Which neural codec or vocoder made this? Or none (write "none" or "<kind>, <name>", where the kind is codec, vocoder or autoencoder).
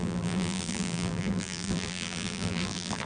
vocoder, BigVGAN v2